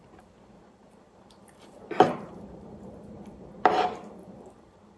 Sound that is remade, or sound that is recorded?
remade